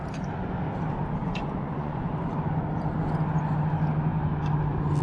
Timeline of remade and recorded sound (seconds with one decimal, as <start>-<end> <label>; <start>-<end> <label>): 0.0-1.2 recorded; 1.2-2.1 remade; 2.1-5.0 recorded